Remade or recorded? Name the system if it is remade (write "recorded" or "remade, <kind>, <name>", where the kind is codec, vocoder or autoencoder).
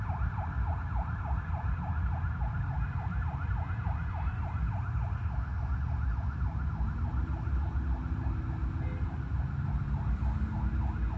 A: recorded